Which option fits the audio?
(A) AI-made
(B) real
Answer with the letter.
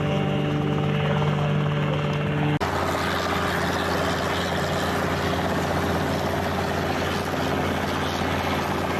B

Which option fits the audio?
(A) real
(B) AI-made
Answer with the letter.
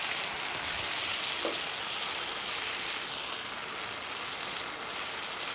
A